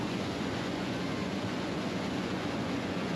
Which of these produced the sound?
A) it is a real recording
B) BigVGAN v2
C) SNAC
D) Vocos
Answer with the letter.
D